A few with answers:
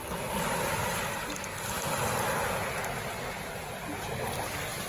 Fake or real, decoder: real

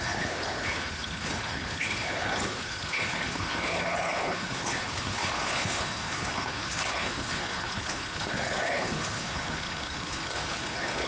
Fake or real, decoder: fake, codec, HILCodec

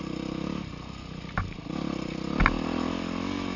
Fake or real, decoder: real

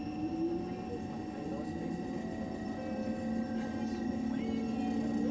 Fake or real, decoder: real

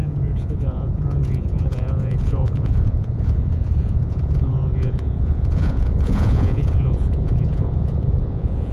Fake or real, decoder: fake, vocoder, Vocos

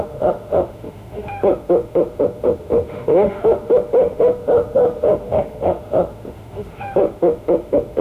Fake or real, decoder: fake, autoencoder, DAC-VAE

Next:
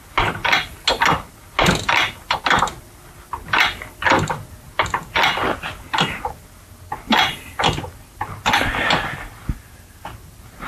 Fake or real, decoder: real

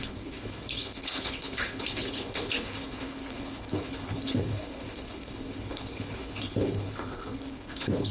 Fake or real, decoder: fake, codec, HILCodec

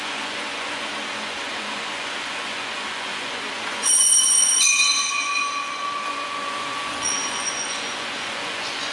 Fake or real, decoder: fake, vocoder, Vocos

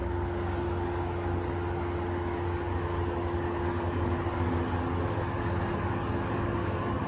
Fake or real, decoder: fake, codec, DAC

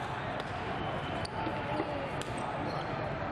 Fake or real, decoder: real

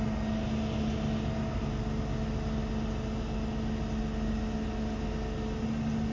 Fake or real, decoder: real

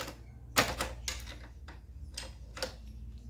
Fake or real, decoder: real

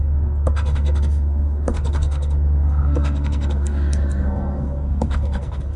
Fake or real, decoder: fake, codec, SNAC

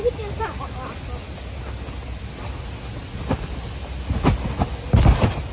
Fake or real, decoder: real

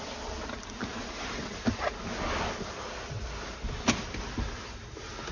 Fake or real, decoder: real